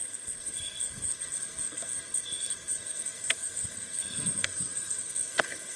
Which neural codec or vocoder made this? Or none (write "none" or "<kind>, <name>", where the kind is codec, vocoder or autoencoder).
codec, SNAC